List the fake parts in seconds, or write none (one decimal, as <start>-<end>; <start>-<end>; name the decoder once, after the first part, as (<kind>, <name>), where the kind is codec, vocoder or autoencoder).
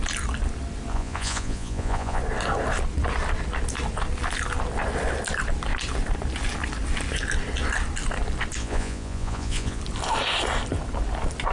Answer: 0.9-2.2 (vocoder, Vocos); 8.6-9.8